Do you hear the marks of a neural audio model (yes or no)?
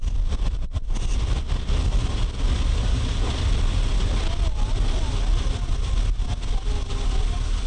no